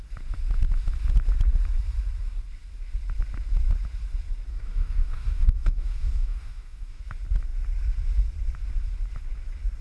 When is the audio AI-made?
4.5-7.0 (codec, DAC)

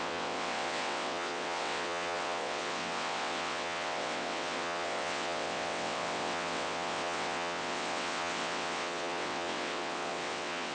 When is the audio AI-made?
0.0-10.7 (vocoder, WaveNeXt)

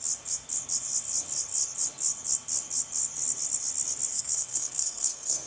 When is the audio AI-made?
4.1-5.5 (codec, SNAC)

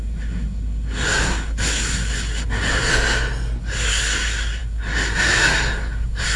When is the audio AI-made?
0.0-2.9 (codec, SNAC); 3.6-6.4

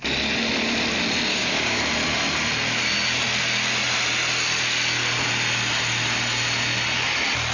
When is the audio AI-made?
1.3-1.8 (codec, DAC)

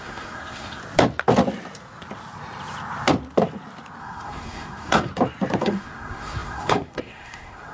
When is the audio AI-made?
0.0-0.8 (codec, SNAC); 4.0-5.1; 5.6-7.7

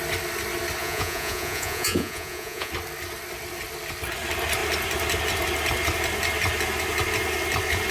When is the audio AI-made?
0.8-2.7 (vocoder, Vocos)